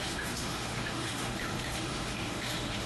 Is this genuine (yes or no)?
no